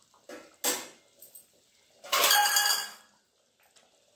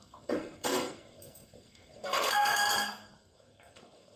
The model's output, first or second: second